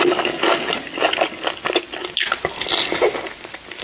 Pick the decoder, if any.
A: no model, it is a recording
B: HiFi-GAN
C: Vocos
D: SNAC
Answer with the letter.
A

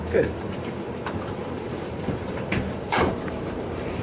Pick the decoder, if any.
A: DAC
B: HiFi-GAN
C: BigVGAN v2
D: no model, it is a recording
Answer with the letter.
C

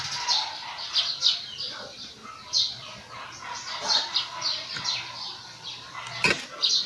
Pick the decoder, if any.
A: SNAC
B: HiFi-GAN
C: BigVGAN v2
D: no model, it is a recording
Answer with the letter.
D